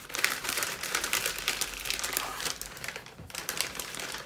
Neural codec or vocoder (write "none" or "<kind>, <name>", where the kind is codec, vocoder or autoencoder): vocoder, BigVGAN v2